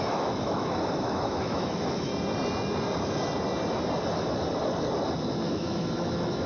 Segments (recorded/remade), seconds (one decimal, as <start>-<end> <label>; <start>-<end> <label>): 0.0-2.1 remade; 2.1-5.2 recorded; 5.2-6.5 remade